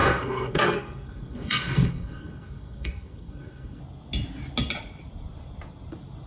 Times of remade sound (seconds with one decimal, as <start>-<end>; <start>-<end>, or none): 0.0-3.8